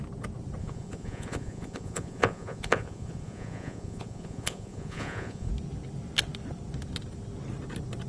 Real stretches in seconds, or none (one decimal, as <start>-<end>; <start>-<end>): 0.0-0.6; 5.5-8.1